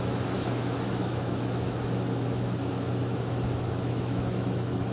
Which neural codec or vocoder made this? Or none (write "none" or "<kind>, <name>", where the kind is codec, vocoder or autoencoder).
autoencoder, DAC-VAE